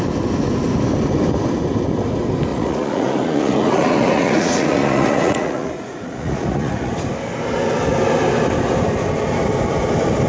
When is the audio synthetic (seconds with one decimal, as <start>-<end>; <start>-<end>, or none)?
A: 2.5-6.9